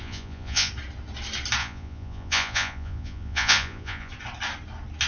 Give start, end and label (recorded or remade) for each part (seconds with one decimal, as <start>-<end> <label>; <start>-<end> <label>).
0.0-0.7 remade; 0.7-1.6 recorded; 1.6-4.1 remade; 4.1-5.1 recorded